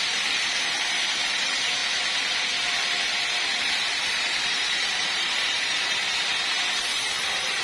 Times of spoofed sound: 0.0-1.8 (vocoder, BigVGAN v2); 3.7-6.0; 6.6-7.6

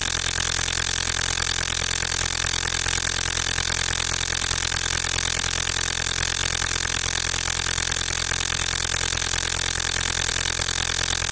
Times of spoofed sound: none

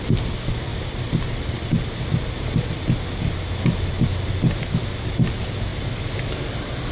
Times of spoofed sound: none

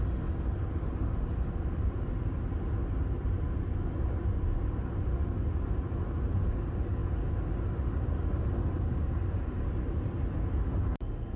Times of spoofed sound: none

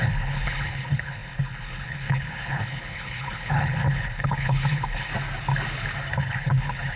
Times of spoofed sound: 0.0-5.1 (codec, HILCodec); 6.2-7.0

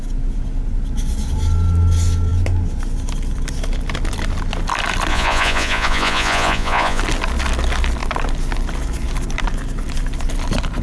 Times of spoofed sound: 5.1-7.0 (vocoder, Vocos)